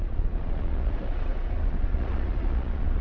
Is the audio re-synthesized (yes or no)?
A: yes